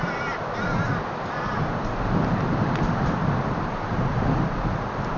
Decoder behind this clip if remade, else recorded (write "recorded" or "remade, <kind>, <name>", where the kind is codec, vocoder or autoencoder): recorded